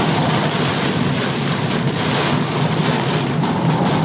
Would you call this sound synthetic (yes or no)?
no